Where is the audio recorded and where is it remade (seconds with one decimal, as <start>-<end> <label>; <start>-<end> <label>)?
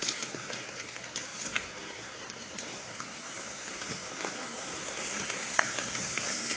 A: 0.0-6.6 remade